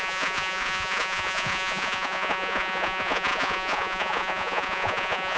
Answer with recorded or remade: remade